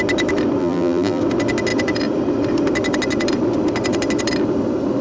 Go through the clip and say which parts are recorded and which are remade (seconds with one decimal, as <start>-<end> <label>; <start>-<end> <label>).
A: 0.0-0.6 recorded; 0.6-1.2 remade; 1.2-5.0 recorded